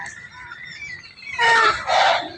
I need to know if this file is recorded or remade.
recorded